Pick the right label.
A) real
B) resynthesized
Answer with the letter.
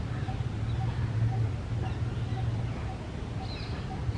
A